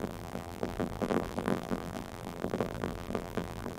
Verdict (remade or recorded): remade